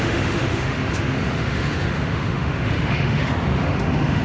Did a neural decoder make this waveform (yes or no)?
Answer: yes